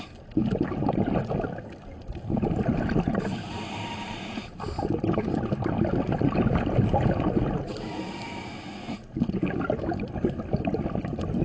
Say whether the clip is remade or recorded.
recorded